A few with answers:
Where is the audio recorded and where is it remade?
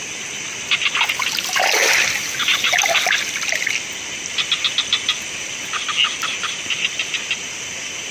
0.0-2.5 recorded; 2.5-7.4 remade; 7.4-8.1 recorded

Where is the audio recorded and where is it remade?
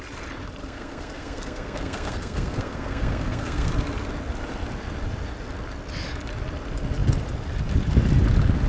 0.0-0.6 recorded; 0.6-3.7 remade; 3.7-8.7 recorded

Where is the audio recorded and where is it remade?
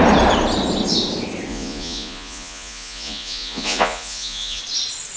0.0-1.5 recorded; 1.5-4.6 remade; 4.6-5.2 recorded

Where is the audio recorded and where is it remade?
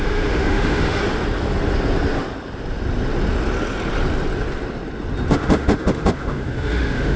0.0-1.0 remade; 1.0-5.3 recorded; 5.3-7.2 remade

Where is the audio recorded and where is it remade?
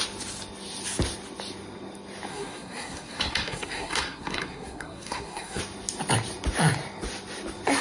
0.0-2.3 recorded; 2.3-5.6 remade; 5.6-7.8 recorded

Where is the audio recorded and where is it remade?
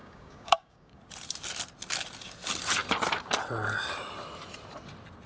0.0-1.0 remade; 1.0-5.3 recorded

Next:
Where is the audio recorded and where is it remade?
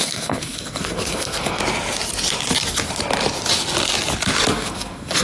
0.0-1.6 remade; 1.6-4.5 recorded; 4.5-5.2 remade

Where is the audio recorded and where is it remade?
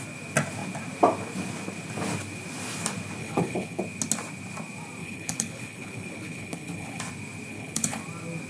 0.0-3.2 recorded; 3.2-3.8 remade; 3.8-5.0 recorded; 5.0-7.0 remade; 7.0-7.5 recorded; 7.5-8.0 remade; 8.0-8.5 recorded